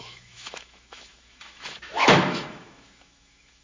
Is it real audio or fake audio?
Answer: fake